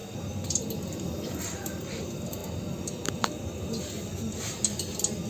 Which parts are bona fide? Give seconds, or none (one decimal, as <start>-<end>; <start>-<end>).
0.0-5.3